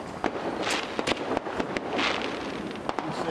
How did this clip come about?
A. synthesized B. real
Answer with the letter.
B